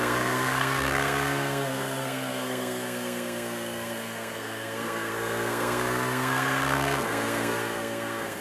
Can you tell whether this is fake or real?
fake